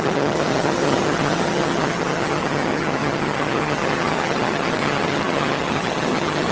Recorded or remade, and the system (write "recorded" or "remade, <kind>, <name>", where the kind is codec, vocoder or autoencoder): remade, vocoder, HiFi-GAN